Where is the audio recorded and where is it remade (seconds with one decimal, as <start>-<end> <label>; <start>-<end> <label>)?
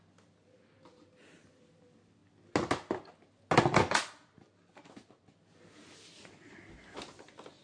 0.0-7.6 recorded